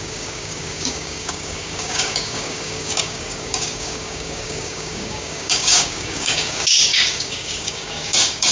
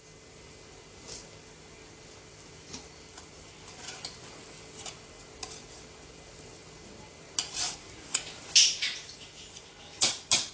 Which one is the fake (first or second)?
first